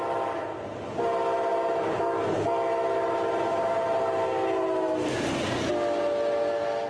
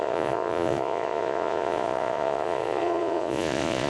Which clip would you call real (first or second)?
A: first